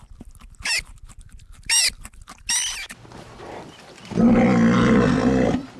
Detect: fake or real real